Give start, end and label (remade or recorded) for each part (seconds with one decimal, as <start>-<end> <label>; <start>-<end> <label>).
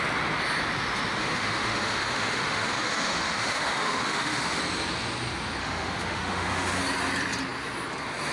0.0-1.2 recorded; 1.2-4.6 remade; 4.6-5.6 recorded; 5.6-6.8 remade; 6.8-8.3 recorded